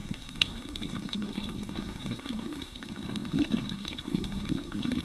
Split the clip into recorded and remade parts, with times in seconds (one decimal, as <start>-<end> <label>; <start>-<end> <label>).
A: 0.0-5.0 remade